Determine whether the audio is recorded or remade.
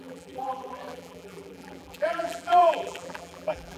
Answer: remade